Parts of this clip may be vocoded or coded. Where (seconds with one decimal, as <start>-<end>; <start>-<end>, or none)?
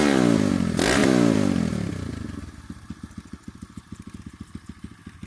none